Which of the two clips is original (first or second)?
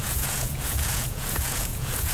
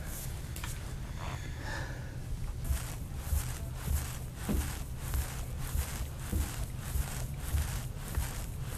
second